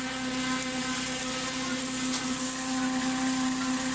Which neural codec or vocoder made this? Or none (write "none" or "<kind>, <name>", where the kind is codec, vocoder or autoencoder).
none